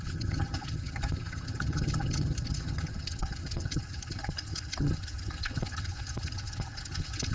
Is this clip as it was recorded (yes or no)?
no